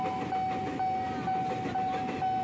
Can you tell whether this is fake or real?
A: real